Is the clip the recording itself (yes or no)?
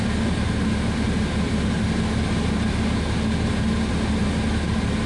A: yes